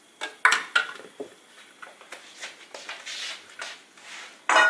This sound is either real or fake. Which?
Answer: real